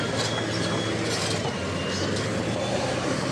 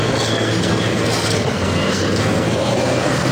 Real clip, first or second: first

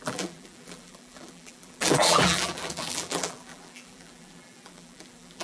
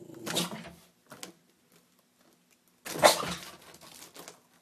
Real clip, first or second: second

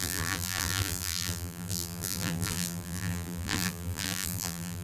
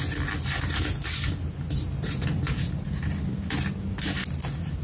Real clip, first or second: second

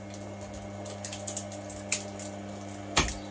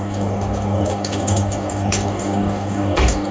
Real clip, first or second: first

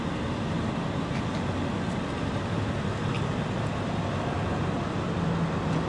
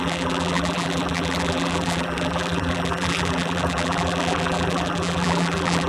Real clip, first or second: first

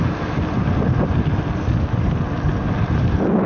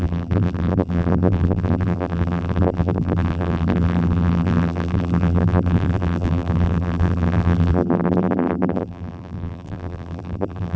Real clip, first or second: first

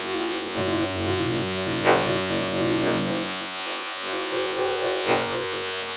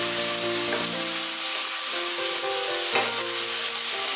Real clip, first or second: second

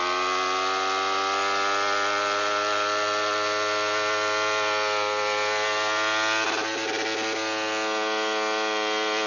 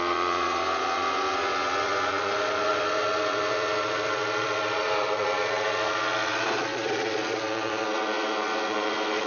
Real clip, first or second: first